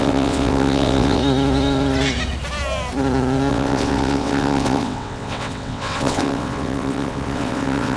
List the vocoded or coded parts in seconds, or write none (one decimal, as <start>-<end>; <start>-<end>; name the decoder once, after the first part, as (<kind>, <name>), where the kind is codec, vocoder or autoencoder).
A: 0.0-1.2 (vocoder, WaveNeXt); 3.5-8.0

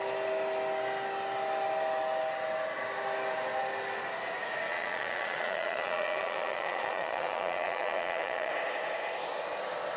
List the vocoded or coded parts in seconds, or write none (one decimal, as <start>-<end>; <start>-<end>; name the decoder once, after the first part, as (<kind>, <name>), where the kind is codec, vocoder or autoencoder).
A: 4.7-8.5 (vocoder, Vocos)

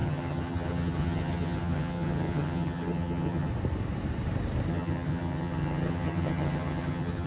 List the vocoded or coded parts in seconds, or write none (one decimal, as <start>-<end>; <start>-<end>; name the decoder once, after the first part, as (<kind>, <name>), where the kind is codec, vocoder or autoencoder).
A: 0.0-3.5 (vocoder, HiFi-GAN); 4.7-7.3

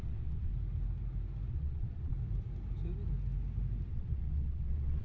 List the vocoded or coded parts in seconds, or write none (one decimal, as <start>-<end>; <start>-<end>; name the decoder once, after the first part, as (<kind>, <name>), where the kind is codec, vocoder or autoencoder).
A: 0.0-0.5 (vocoder, WaveNeXt); 1.5-2.1; 3.9-5.0